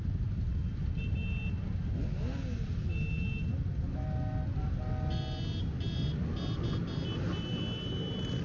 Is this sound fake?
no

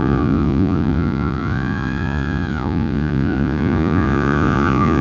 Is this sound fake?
yes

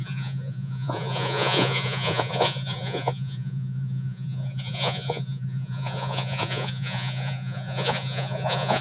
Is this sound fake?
yes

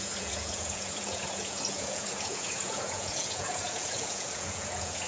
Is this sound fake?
yes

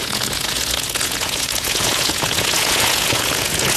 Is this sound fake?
yes